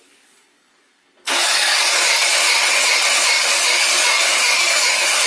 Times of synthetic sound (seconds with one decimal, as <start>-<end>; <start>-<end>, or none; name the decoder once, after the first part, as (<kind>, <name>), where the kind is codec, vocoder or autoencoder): 0.0-2.1 (codec, DAC); 3.3-5.3